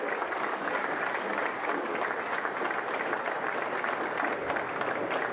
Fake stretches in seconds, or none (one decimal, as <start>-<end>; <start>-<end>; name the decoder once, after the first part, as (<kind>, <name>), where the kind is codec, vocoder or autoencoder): 0.0-1.9 (codec, DAC)